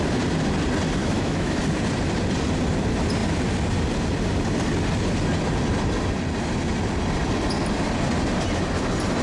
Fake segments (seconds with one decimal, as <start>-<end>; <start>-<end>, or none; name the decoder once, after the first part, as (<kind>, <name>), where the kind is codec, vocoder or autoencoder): 1.0-1.6 (autoencoder, DAC-VAE)